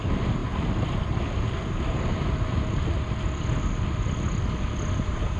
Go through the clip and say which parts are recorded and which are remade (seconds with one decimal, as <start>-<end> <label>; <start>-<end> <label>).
0.0-5.4 recorded

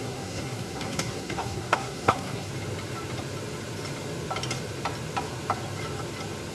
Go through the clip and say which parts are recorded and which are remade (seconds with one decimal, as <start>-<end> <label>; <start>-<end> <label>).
0.0-2.5 remade; 2.5-6.5 recorded

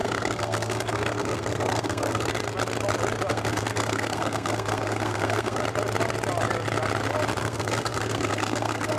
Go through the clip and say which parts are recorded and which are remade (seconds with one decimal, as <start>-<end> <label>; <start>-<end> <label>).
0.0-2.3 remade; 2.3-3.3 recorded; 3.3-5.6 remade; 5.6-7.4 recorded; 7.4-9.0 remade

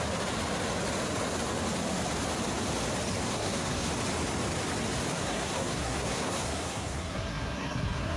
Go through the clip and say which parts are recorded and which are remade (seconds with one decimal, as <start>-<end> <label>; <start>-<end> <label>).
0.0-3.2 recorded; 3.2-3.9 remade; 3.9-5.1 recorded; 5.1-8.2 remade